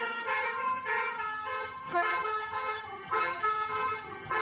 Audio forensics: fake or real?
fake